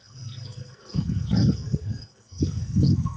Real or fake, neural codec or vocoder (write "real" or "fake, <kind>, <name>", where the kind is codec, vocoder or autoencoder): fake, codec, SNAC